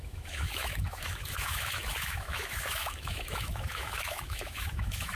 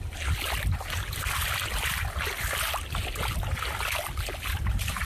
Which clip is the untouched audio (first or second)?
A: second